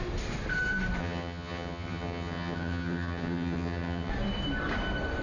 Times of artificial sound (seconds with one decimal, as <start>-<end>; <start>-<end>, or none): 1.0-4.1